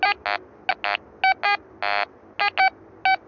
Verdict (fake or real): real